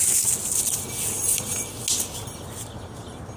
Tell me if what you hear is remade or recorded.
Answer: recorded